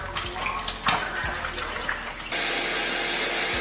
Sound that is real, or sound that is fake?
real